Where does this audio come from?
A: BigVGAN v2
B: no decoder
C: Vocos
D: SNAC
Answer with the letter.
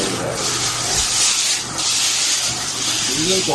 B